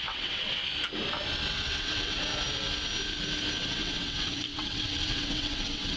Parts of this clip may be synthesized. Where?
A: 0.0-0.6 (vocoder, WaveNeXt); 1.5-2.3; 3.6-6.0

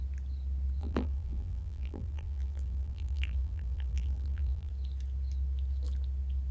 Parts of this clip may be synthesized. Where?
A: 0.8-4.7 (vocoder, BigVGAN v2)

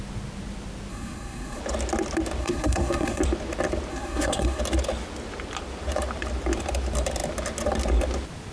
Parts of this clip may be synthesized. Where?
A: 0.9-1.6 (codec, SNAC); 2.4-3.2; 3.9-4.6

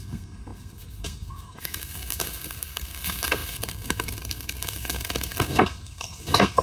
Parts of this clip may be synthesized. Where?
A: 0.0-6.6 (codec, SNAC)